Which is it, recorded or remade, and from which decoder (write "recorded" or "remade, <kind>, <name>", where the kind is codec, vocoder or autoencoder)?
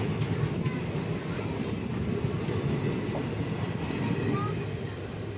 recorded